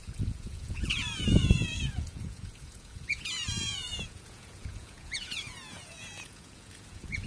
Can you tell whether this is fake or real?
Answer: fake